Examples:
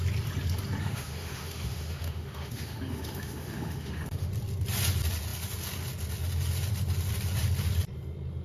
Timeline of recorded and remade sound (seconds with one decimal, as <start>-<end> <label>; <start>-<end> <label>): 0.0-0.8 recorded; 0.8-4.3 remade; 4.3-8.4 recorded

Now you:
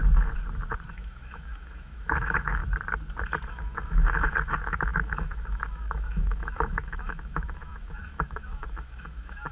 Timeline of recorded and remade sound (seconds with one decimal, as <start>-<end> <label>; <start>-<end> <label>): 0.0-0.9 recorded; 0.9-2.6 remade; 2.6-3.5 recorded; 3.5-9.5 remade

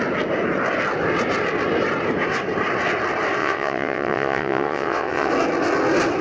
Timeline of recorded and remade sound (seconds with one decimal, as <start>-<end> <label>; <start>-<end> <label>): 0.0-3.4 recorded; 3.4-5.3 remade; 5.3-6.2 recorded

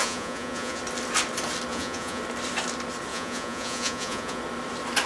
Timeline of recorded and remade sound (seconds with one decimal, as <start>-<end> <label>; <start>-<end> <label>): 0.0-0.8 remade; 0.8-1.7 recorded; 1.7-2.2 remade; 2.2-3.1 recorded; 3.1-4.4 remade; 4.4-5.1 recorded

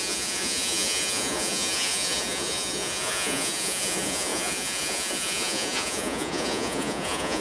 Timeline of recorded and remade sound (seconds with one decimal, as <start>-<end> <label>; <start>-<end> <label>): 0.0-7.4 remade